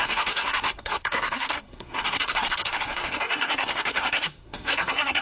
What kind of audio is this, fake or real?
fake